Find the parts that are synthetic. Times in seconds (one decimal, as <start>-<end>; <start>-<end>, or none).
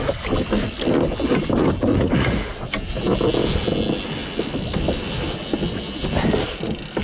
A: 1.9-2.5